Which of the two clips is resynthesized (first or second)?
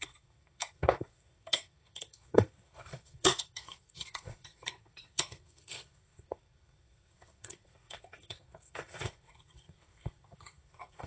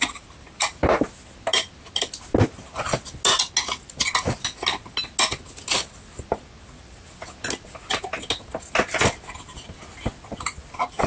first